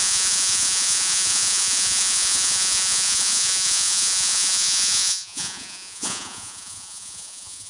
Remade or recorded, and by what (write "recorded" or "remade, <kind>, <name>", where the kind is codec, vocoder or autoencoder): remade, vocoder, Vocos